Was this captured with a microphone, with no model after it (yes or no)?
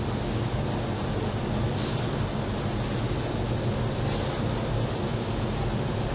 yes